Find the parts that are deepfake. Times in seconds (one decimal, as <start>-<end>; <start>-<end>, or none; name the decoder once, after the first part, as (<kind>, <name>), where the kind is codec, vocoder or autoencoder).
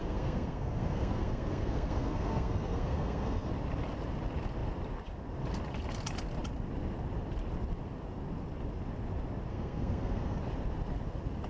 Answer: 0.0-3.5 (codec, SNAC); 9.5-10.4